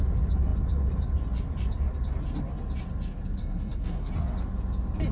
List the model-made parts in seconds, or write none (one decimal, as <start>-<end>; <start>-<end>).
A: 3.4-4.1